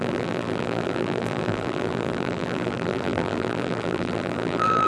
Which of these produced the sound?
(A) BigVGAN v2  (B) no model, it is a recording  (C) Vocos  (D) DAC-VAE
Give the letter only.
A